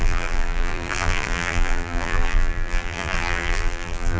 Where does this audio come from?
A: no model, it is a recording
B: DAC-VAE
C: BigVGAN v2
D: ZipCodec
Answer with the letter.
C